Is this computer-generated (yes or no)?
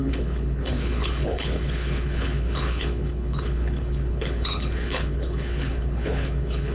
yes